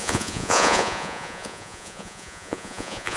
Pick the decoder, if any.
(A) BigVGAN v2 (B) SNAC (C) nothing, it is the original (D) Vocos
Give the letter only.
D